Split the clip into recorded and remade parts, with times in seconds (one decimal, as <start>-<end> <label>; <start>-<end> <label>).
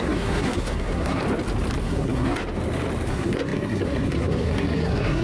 0.0-1.2 remade; 1.2-1.8 recorded; 1.8-2.4 remade; 2.4-3.1 recorded; 3.1-5.2 remade